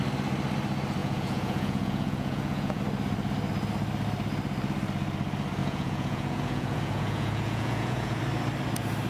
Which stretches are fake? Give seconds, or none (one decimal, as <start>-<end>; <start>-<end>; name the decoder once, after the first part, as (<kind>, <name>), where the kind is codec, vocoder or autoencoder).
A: 1.0-2.8 (vocoder, Vocos); 5.6-8.2